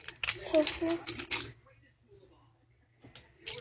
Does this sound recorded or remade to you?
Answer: recorded